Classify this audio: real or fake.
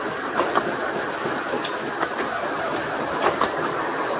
real